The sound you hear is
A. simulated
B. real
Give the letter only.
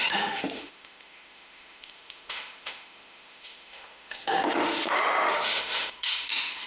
A